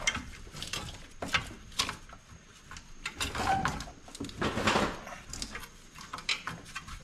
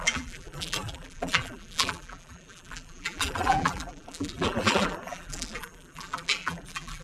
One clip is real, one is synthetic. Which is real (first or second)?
first